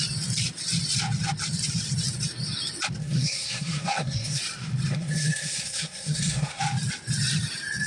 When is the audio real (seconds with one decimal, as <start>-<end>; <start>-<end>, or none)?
0.0-3.0; 4.4-4.9; 6.6-7.9